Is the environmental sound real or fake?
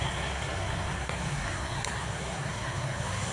fake